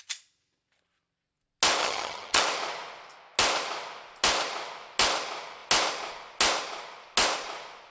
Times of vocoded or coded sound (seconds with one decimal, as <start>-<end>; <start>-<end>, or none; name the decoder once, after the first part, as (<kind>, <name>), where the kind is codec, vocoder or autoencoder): 1.8-2.4 (vocoder, HiFi-GAN)